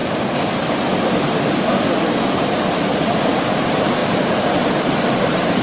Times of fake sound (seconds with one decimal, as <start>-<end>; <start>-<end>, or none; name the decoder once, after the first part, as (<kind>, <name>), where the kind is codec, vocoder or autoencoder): 2.7-4.0 (vocoder, BigVGAN v2); 4.6-5.6